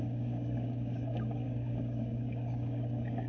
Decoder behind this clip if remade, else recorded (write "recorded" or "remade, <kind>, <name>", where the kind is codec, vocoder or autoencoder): remade, codec, DAC